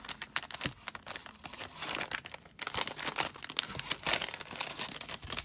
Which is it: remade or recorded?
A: recorded